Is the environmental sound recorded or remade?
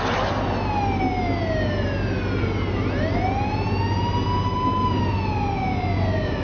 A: recorded